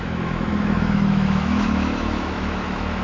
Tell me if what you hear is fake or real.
fake